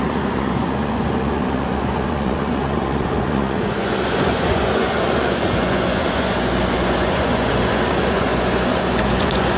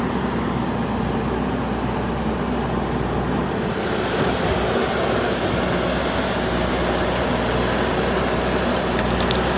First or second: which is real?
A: second